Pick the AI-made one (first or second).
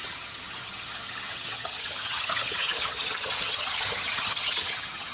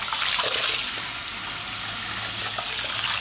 first